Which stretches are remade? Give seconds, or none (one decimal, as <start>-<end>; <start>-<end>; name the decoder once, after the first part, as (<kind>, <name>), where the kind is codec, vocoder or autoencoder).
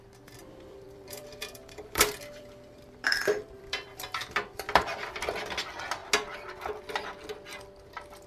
0.4-4.9 (vocoder, BigVGAN v2)